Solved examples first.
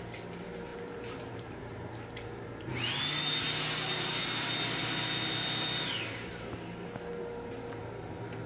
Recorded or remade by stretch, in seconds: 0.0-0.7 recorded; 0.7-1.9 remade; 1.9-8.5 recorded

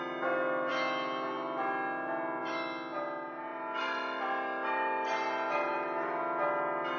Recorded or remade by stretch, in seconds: 0.0-3.5 recorded; 3.5-6.2 remade; 6.2-7.0 recorded